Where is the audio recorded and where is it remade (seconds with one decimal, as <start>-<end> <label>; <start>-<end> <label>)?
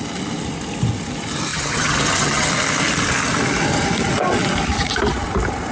0.0-1.5 recorded; 1.5-2.5 remade; 2.5-5.7 recorded